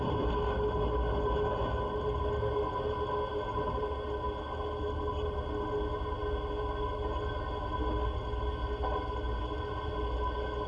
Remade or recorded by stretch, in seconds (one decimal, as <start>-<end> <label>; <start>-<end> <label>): 0.0-10.7 recorded